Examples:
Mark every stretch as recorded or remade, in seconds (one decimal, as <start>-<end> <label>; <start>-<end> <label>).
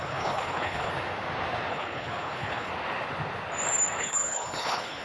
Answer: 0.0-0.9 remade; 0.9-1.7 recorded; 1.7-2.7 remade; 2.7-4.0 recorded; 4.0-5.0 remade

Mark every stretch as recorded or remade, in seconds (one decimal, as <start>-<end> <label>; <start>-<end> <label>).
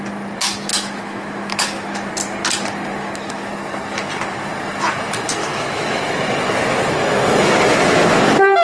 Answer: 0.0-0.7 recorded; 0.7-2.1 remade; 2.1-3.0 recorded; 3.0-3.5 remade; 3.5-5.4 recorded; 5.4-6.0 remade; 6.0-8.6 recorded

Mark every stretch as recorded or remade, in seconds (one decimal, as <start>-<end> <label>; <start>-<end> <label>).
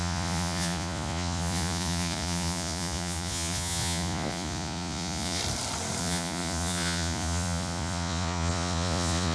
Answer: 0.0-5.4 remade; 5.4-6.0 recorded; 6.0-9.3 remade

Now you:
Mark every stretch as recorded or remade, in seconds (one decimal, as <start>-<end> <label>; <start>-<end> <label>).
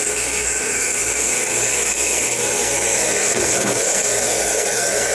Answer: 0.0-5.1 remade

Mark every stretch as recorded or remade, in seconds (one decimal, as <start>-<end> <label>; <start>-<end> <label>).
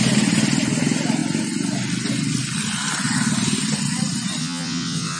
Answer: 0.0-4.4 recorded; 4.4-5.2 remade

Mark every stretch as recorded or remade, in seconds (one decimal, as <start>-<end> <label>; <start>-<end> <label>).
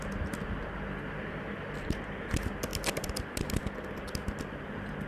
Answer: 0.0-5.1 recorded